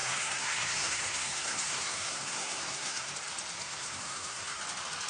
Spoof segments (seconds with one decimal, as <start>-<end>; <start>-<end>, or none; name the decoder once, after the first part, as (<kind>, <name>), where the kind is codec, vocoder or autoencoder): 0.0-3.1 (codec, SNAC); 3.6-4.6